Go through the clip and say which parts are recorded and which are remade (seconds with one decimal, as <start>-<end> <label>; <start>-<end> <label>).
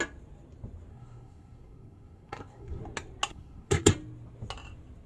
0.0-0.9 recorded; 0.9-2.8 remade; 2.8-3.3 recorded; 3.3-3.9 remade; 3.9-5.1 recorded